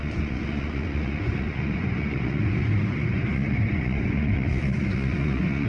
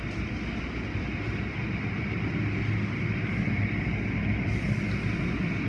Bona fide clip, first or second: second